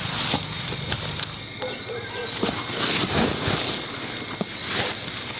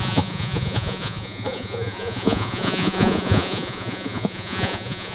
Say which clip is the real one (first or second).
first